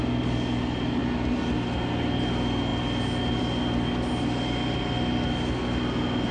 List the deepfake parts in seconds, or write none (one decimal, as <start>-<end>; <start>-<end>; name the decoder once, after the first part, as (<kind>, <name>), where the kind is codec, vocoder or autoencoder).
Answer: none

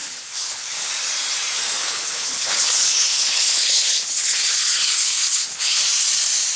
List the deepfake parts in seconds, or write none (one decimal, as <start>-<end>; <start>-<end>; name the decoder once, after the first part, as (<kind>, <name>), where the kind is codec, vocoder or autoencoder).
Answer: 0.0-0.9 (codec, HILCodec); 1.8-5.8

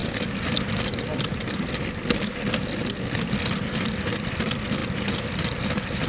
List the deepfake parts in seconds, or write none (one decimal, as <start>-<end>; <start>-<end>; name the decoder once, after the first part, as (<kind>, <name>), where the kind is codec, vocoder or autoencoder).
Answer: none